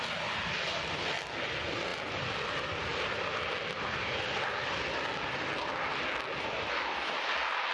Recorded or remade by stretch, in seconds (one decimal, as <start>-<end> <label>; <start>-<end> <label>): 0.0-7.7 recorded

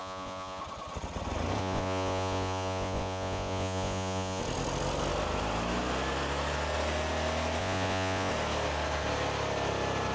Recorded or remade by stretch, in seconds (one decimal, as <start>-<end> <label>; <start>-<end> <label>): 0.0-0.6 remade; 0.6-1.6 recorded; 1.6-4.4 remade; 4.4-7.6 recorded; 7.6-8.3 remade; 8.3-10.1 recorded

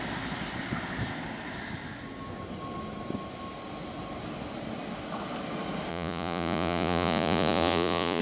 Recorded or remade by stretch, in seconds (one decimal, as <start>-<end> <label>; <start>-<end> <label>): 0.0-5.9 recorded; 5.9-8.2 remade